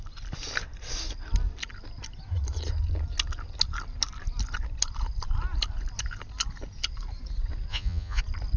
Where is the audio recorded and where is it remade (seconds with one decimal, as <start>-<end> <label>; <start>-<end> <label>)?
0.0-7.7 recorded; 7.7-8.2 remade; 8.2-8.6 recorded